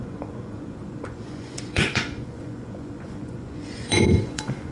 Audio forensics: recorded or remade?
remade